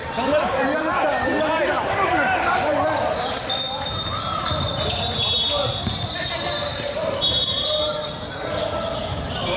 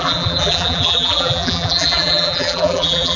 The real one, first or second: first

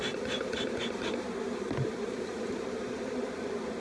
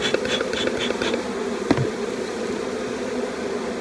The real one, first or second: second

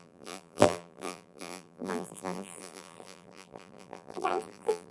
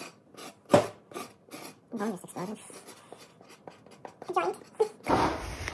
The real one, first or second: second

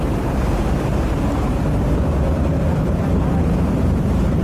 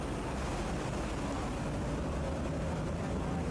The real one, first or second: second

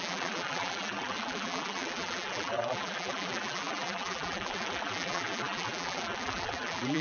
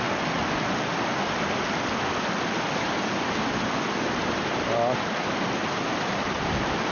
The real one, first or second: second